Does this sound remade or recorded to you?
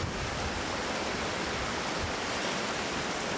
remade